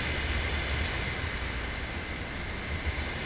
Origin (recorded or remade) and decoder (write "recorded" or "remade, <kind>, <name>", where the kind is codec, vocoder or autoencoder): recorded